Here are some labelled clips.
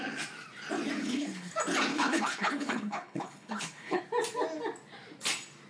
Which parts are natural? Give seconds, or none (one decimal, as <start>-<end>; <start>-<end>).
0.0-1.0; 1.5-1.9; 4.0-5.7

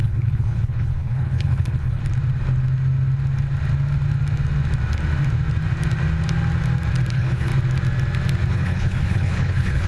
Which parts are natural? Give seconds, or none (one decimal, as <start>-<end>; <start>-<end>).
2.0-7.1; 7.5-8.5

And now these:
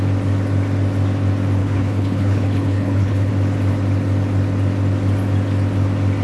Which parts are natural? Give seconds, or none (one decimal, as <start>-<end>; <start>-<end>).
0.0-1.6; 3.3-6.2

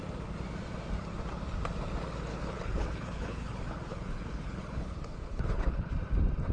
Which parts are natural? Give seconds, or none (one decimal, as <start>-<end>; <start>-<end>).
0.0-2.3; 5.9-6.5

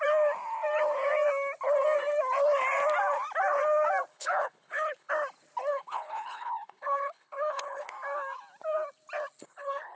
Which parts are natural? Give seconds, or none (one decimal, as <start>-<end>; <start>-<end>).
0.0-4.1; 5.1-5.7; 7.9-9.4

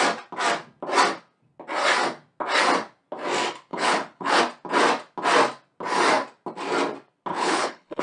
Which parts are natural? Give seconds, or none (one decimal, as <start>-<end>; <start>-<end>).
0.0-3.7; 4.4-7.3

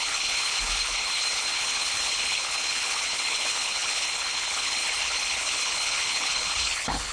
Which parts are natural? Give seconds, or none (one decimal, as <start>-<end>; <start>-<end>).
none